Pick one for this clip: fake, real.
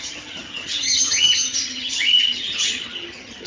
fake